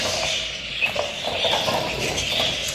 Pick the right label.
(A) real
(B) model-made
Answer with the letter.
A